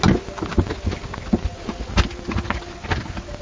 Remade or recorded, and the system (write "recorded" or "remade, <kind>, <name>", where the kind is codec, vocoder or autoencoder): recorded